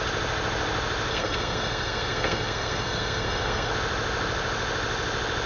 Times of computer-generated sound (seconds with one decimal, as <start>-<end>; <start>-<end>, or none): 1.1-3.7

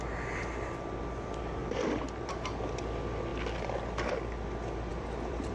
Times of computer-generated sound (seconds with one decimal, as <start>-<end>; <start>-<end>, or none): 1.6-2.4; 4.9-5.5

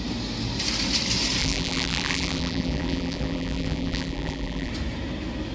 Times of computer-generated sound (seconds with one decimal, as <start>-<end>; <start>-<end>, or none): 1.4-4.7